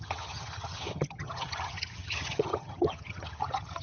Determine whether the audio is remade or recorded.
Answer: remade